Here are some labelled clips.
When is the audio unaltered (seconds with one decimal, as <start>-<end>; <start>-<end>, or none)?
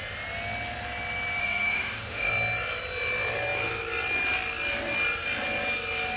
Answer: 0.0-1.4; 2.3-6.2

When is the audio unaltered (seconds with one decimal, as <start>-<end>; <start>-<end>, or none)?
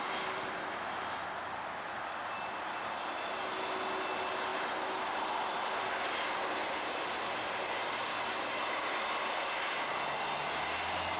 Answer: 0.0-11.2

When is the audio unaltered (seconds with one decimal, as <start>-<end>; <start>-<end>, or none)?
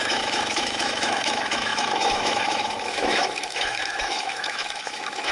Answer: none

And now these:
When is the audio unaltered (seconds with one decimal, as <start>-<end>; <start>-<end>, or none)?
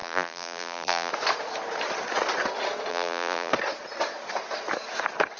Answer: 1.1-2.9; 3.5-5.4